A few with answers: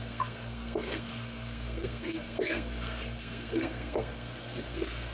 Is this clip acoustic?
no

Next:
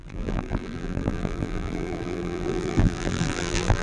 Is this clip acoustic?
no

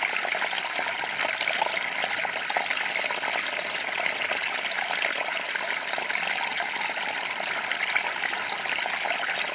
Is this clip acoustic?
yes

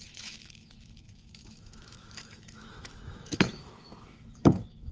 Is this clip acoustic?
no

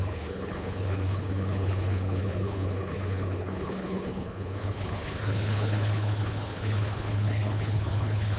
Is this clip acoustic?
no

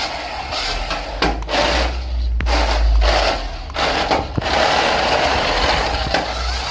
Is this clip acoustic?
yes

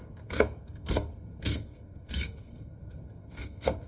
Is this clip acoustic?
no